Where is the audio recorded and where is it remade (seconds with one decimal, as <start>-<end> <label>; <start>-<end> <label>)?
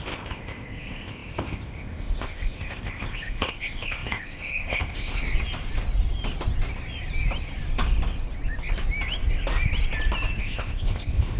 0.0-5.2 remade; 5.2-10.4 recorded; 10.4-11.4 remade